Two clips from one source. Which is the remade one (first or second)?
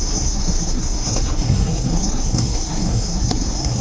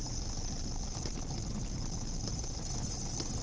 first